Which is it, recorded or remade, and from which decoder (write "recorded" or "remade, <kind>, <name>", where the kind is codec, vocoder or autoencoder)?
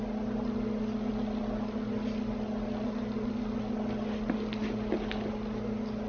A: recorded